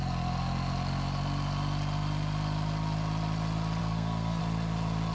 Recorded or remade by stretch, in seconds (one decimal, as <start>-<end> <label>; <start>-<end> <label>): 0.0-3.8 recorded; 3.8-4.4 remade; 4.4-5.1 recorded